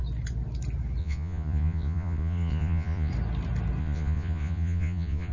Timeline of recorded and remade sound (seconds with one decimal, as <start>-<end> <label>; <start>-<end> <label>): 0.0-1.0 recorded; 1.0-3.1 remade; 3.1-3.8 recorded; 3.8-5.3 remade